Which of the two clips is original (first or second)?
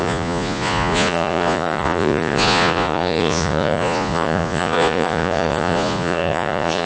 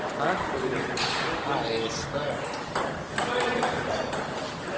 second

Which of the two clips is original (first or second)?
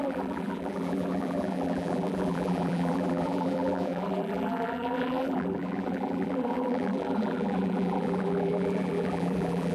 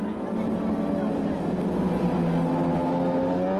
second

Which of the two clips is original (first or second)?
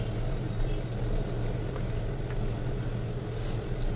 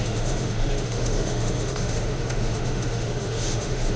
first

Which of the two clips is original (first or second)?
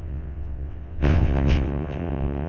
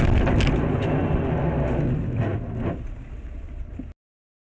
second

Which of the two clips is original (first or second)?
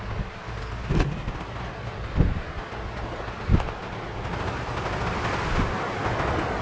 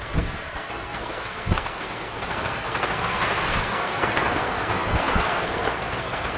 first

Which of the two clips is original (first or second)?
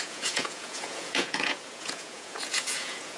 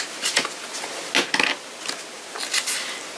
second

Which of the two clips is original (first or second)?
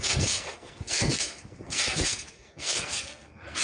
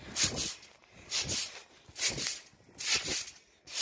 second